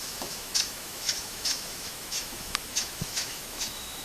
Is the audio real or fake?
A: fake